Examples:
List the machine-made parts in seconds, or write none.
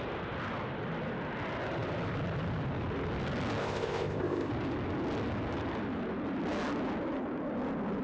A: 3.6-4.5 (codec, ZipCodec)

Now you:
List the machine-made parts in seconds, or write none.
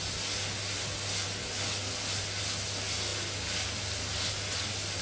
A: none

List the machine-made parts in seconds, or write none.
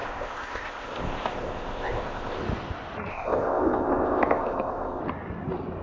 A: 0.0-2.4 (codec, ZipCodec); 3.1-5.0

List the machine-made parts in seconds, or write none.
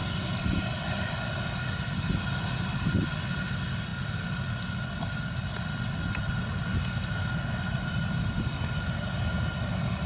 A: none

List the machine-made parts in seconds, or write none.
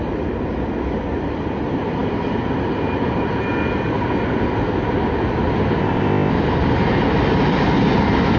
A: 5.8-6.3 (codec, ZipCodec)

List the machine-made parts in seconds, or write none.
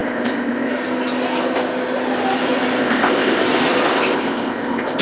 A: 0.0-0.7 (codec, ZipCodec); 2.8-3.4; 3.9-5.0